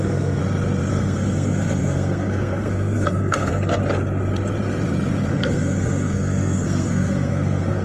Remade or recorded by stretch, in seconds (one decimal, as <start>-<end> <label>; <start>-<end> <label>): 0.0-0.4 remade; 0.4-0.9 recorded; 0.9-3.8 remade; 3.8-5.3 recorded; 5.3-7.8 remade